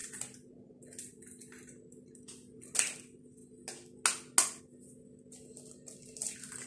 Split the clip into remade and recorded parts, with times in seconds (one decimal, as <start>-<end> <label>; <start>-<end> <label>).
0.0-6.7 recorded